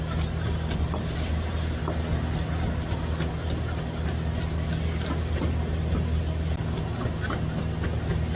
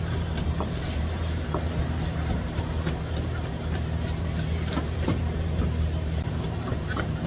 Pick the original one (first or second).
first